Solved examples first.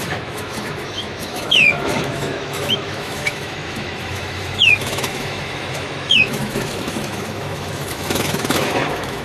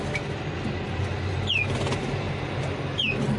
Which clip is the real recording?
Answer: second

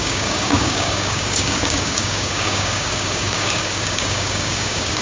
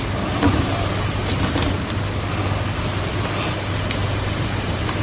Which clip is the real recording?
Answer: second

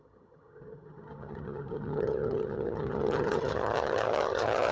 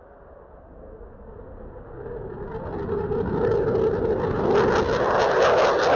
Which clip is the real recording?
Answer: second